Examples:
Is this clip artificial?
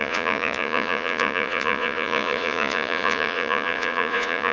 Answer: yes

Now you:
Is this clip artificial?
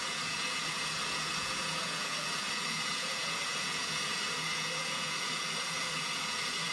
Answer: yes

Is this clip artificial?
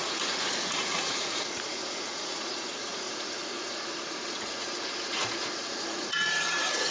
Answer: yes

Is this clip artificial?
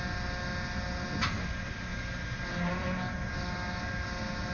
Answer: no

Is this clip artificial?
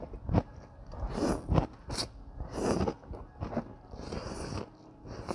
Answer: no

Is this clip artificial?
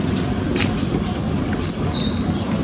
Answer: no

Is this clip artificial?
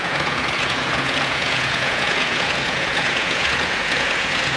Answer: yes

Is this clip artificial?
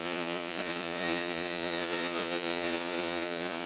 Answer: yes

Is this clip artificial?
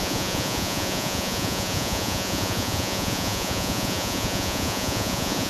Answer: yes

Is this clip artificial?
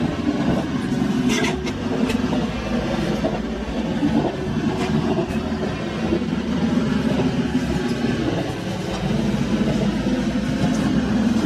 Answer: no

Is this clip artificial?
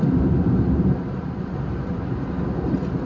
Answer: no